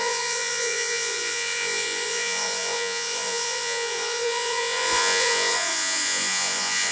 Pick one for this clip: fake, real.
fake